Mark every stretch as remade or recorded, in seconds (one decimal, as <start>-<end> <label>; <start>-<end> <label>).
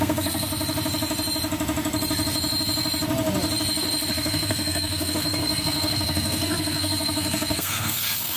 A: 0.0-0.5 remade; 0.5-4.1 recorded; 4.1-8.4 remade